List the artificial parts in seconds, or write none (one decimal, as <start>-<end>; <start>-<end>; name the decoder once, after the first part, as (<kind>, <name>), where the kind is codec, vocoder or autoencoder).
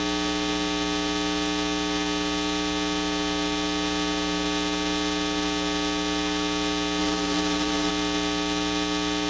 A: 7.0-7.9 (vocoder, BigVGAN v2)